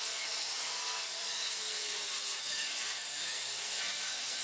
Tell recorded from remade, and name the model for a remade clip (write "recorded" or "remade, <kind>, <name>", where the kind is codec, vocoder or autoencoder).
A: remade, codec, SNAC